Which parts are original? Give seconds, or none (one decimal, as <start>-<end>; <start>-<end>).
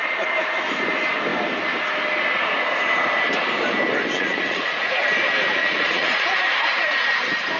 0.0-4.1; 5.0-5.6; 6.9-7.6